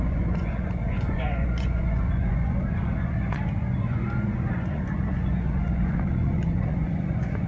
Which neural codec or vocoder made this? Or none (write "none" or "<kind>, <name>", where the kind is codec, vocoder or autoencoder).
vocoder, Vocos